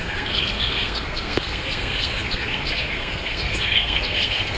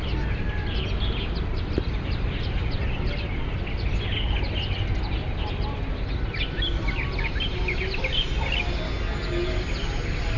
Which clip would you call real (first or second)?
second